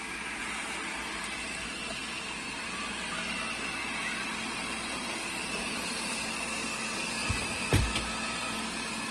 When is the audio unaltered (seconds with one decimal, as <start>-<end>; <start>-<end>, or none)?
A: 0.0-9.1